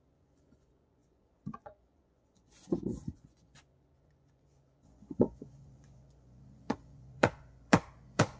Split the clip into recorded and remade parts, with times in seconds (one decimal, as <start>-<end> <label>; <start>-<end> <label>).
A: 0.0-8.4 remade